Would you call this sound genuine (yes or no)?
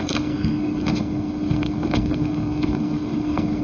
no